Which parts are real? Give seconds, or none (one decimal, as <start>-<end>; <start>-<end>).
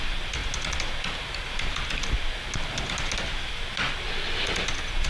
0.0-5.1